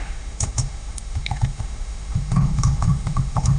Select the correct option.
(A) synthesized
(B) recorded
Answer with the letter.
A